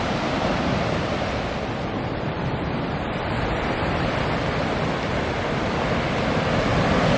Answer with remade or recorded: remade